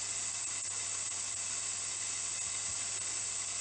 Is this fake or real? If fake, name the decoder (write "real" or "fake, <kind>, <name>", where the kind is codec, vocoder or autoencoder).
real